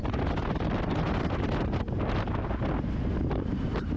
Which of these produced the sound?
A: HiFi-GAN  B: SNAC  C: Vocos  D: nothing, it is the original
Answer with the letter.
D